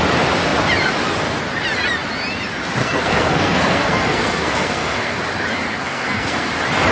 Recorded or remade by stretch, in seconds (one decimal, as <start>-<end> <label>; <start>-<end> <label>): 0.0-2.8 recorded; 2.8-5.2 remade; 5.2-5.7 recorded; 5.7-6.5 remade; 6.5-6.9 recorded